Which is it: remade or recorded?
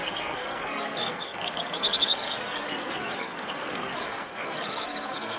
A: remade